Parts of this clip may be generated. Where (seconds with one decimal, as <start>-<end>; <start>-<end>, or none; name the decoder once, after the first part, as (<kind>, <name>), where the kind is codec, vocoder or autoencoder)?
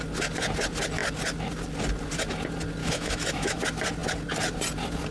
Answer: 2.8-3.6 (autoencoder, DAC-VAE)